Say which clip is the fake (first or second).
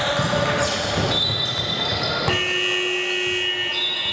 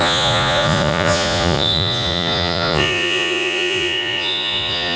second